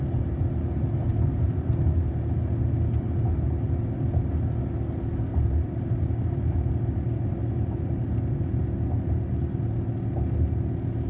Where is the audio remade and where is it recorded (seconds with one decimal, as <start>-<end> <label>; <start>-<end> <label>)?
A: 0.0-1.1 recorded; 1.1-1.7 remade; 1.7-5.3 recorded; 5.3-8.3 remade; 8.3-11.1 recorded